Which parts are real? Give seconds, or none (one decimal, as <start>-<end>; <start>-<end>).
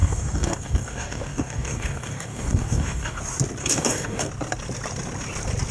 3.2-3.6; 4.3-5.7